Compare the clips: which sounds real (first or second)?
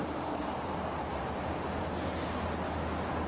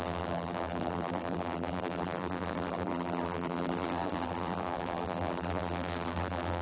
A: first